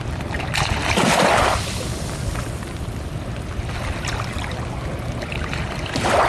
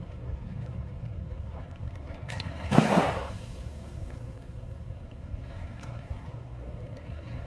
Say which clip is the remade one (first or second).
second